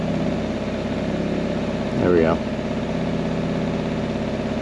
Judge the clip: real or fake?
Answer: real